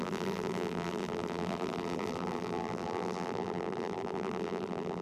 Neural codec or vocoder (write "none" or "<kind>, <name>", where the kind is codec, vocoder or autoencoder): vocoder, BigVGAN v2